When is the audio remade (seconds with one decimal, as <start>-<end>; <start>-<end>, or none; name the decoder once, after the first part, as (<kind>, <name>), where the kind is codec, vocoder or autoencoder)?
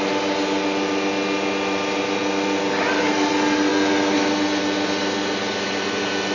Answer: none